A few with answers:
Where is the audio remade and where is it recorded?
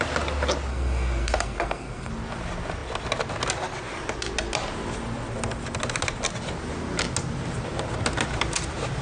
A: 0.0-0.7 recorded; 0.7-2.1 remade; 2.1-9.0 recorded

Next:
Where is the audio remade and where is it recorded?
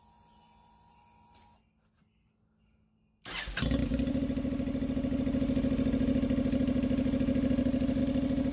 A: 0.0-8.5 recorded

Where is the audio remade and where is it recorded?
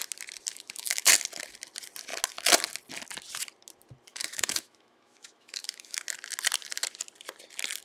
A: 0.0-0.5 recorded; 0.5-1.1 remade; 1.1-4.1 recorded; 4.1-6.0 remade; 6.0-7.8 recorded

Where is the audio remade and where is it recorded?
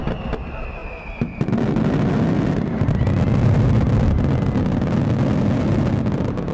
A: 0.0-6.5 recorded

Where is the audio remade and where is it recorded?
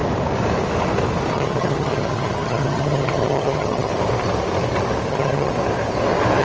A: 0.0-1.3 recorded; 1.3-3.9 remade; 3.9-5.1 recorded; 5.1-5.5 remade; 5.5-6.4 recorded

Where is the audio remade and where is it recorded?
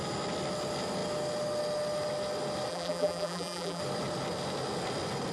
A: 0.0-2.7 recorded; 2.7-3.8 remade; 3.8-5.3 recorded